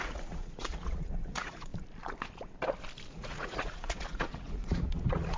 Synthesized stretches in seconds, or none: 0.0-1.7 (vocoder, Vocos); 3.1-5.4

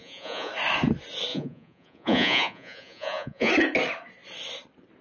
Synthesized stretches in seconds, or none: 0.0-0.5 (vocoder, Vocos); 1.3-3.5

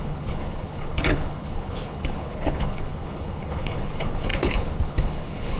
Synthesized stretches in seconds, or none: 0.0-5.6 (codec, HILCodec)

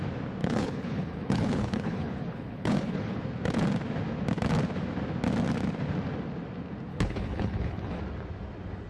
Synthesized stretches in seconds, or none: 0.4-3.2 (codec, HILCodec); 6.9-8.0

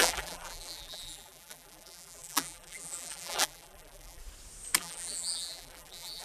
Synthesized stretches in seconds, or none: 0.0-4.2 (vocoder, BigVGAN v2); 4.8-6.2